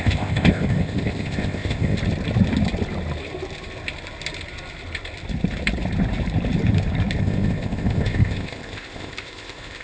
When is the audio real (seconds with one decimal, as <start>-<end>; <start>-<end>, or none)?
2.0-7.2